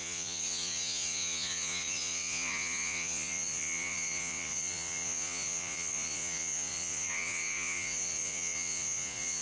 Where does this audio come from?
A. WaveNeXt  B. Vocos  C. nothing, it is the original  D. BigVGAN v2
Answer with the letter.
B